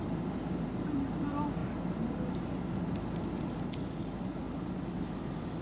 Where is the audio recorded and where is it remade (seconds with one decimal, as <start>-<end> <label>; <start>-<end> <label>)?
0.0-5.6 recorded